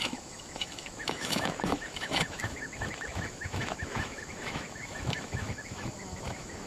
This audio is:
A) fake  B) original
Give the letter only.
A